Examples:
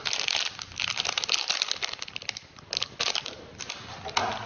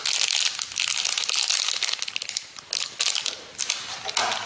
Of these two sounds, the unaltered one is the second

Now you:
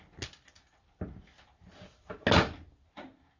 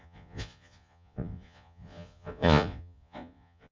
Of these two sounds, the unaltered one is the first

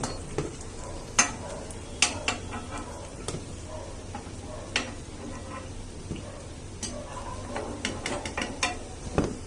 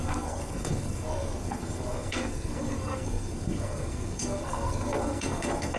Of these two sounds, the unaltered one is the first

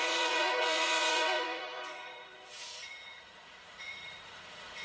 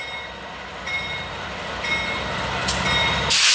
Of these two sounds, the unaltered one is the second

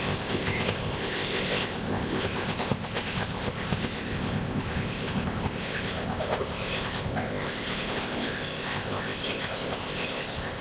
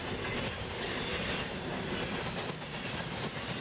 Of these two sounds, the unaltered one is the second